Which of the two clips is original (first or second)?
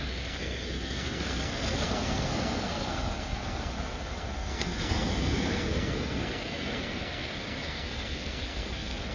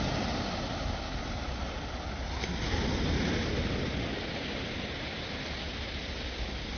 second